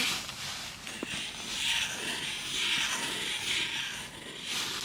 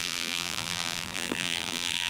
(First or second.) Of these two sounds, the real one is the first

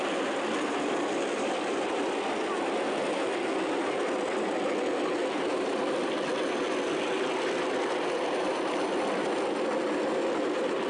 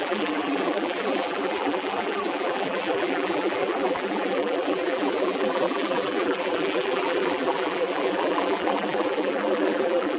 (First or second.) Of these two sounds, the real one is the first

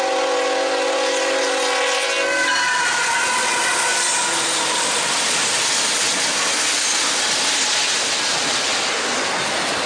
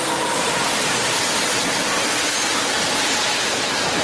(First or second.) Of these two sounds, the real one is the first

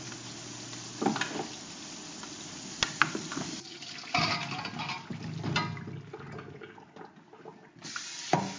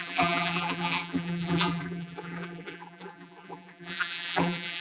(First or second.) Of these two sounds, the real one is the first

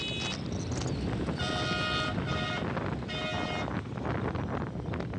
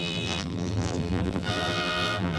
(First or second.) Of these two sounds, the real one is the first